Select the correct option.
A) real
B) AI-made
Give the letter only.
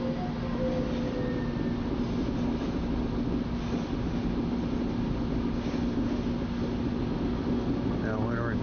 A